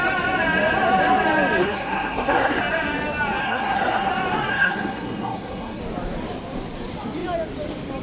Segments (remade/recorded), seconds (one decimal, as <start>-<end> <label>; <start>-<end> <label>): 0.0-1.6 recorded; 1.6-2.6 remade; 2.6-3.4 recorded; 3.4-4.1 remade; 4.1-4.5 recorded; 4.5-5.8 remade; 5.8-8.0 recorded